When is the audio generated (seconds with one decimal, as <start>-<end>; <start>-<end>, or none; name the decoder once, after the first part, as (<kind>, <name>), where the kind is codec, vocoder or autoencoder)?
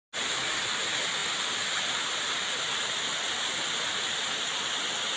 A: none